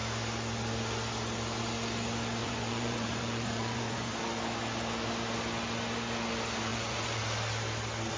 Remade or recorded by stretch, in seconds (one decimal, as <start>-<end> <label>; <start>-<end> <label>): 0.0-2.4 recorded; 2.4-4.1 remade; 4.1-6.7 recorded; 6.7-7.2 remade; 7.2-8.2 recorded